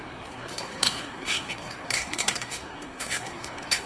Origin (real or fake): fake